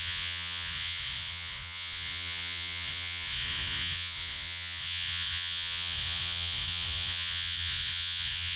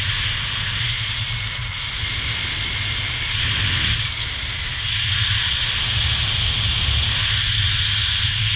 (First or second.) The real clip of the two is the second